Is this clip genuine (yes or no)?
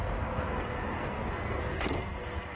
no